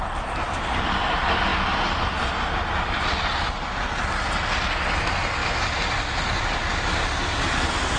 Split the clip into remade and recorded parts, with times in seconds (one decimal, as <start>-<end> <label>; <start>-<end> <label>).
0.0-8.0 recorded